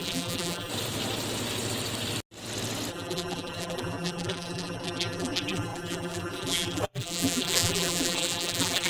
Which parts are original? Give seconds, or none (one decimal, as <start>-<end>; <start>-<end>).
0.7-2.9